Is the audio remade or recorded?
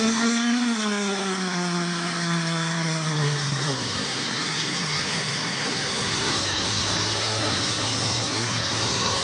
remade